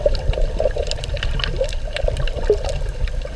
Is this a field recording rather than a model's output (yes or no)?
yes